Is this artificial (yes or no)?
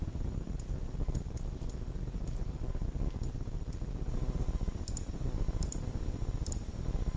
no